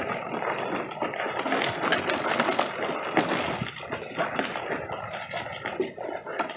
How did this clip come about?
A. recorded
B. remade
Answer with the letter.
A